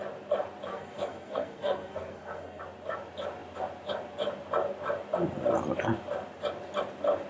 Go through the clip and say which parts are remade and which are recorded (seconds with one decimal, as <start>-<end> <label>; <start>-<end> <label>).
0.0-0.7 recorded; 0.7-2.6 remade; 2.6-7.3 recorded